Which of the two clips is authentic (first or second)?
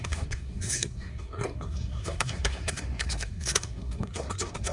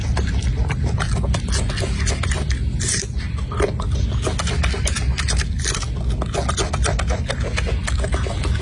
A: second